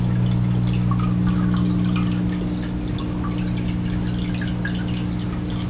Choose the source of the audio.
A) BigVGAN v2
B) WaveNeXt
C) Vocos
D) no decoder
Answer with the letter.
D